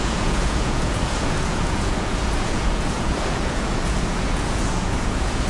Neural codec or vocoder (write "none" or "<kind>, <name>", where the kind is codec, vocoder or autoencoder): vocoder, Vocos